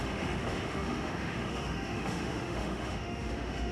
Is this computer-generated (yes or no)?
yes